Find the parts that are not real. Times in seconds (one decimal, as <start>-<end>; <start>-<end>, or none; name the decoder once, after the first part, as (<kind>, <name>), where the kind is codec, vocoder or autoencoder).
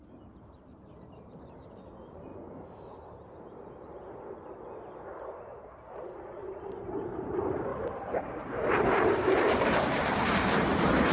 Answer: 0.0-2.3 (vocoder, BigVGAN v2); 5.4-11.1